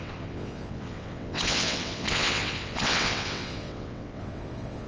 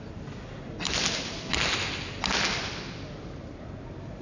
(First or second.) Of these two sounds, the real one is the second